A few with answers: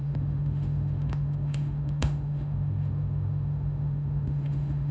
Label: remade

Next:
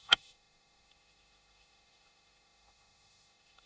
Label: remade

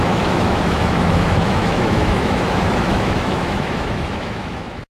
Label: remade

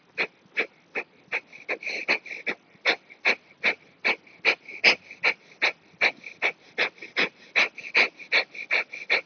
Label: recorded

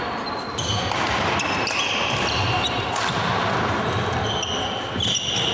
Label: recorded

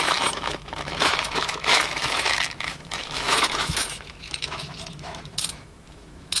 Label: remade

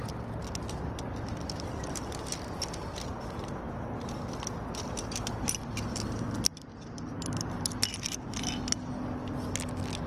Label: recorded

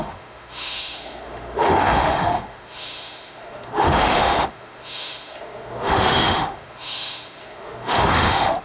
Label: remade